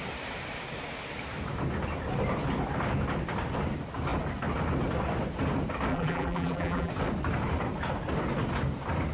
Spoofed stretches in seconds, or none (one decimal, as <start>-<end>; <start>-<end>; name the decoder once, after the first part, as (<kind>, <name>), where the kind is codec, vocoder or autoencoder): 5.9-6.9 (vocoder, BigVGAN v2)